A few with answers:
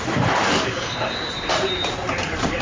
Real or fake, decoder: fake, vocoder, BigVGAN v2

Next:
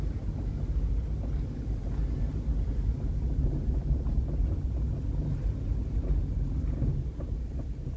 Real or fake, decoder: real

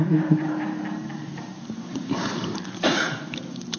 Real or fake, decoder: fake, vocoder, BigVGAN v2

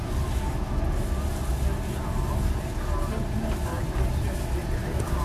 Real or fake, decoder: real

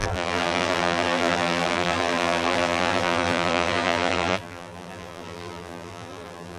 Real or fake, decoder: fake, vocoder, BigVGAN v2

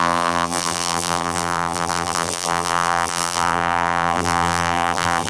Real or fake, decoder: fake, vocoder, BigVGAN v2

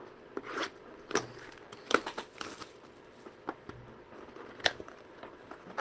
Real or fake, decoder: real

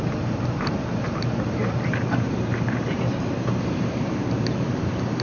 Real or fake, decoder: fake, vocoder, BigVGAN v2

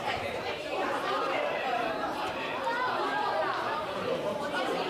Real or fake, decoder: fake, vocoder, BigVGAN v2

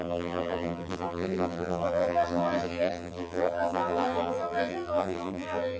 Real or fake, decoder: fake, vocoder, BigVGAN v2